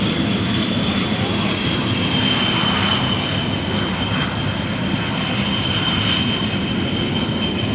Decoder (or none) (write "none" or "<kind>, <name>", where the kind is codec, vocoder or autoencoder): none